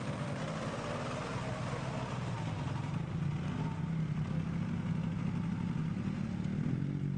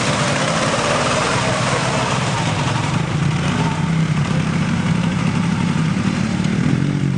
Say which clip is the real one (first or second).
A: first